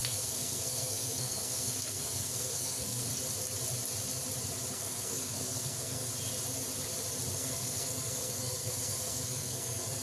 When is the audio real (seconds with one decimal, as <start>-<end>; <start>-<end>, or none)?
3.1-4.7; 6.1-7.3